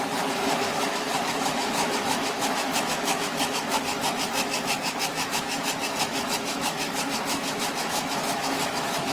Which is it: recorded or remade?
remade